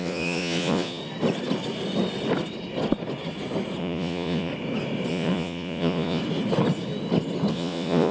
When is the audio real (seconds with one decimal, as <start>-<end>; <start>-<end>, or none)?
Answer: 1.0-3.8; 4.5-5.1; 6.2-7.5